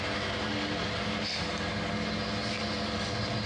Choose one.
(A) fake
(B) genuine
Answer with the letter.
B